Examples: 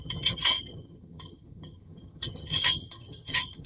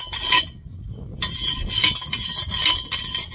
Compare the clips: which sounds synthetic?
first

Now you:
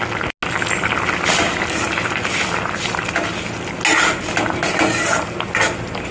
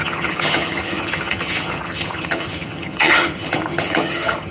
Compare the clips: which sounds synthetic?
second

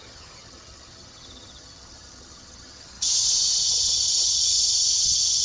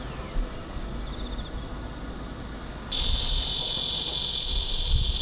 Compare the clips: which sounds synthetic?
first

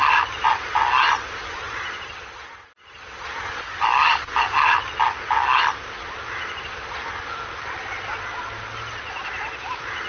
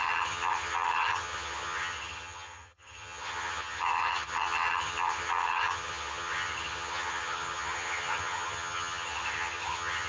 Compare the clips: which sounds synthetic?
second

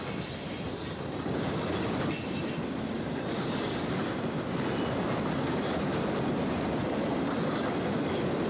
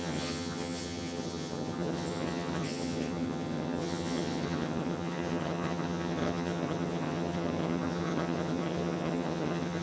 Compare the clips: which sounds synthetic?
second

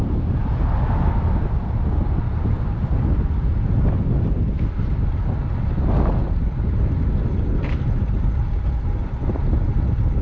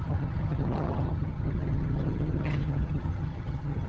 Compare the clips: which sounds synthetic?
second